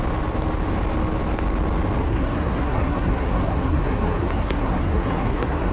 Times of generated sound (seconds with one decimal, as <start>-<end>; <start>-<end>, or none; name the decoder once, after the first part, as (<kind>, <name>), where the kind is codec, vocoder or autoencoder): 2.0-5.7 (codec, SNAC)